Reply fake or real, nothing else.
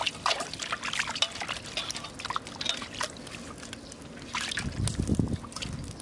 real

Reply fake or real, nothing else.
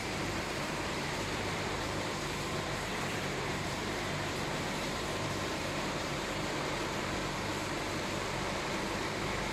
fake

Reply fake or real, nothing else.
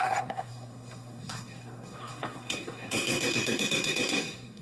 fake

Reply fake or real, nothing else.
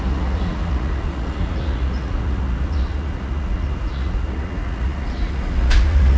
fake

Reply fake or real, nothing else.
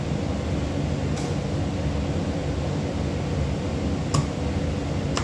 real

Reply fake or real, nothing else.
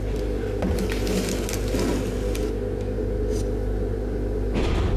real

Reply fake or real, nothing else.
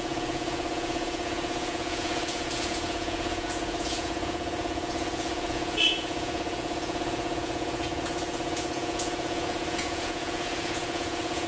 fake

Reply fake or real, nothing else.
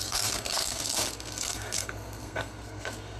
fake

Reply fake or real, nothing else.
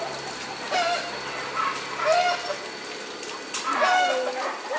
real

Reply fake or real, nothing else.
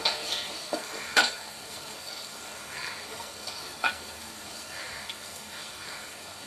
fake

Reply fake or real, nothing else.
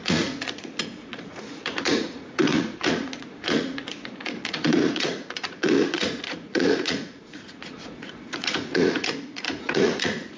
fake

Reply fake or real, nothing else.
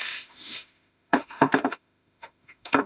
fake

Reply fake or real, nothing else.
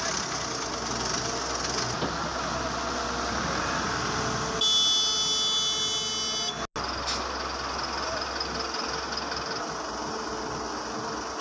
real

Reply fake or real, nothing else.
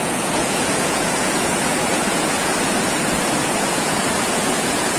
fake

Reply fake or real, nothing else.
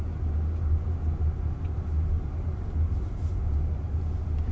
real